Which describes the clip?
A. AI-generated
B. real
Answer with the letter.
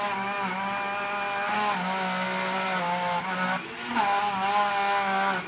B